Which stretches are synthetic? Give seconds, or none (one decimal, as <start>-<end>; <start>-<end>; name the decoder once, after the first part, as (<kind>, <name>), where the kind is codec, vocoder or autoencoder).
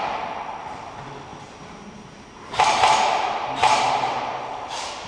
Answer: 1.3-4.4 (vocoder, BigVGAN v2)